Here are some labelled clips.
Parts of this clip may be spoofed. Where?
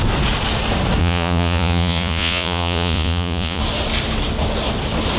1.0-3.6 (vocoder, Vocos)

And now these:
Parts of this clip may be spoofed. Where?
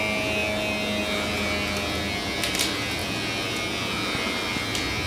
none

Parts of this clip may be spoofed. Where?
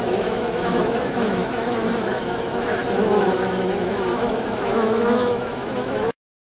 0.0-6.5 (autoencoder, DAC-VAE)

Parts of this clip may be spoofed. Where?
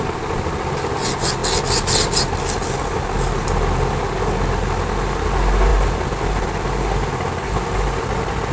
none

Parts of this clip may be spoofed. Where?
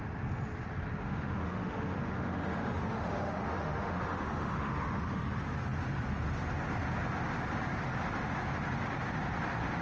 1.0-5.3 (autoencoder, DAC-VAE)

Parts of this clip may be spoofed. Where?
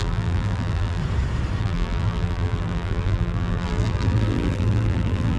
0.0-1.0 (vocoder, BigVGAN v2); 1.6-5.4